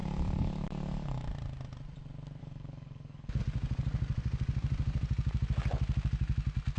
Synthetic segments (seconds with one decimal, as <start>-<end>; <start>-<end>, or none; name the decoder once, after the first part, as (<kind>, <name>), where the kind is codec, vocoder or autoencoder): 0.0-1.3 (codec, DAC); 2.4-3.4